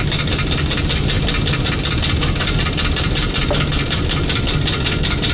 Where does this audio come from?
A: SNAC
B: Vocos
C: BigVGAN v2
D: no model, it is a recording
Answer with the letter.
D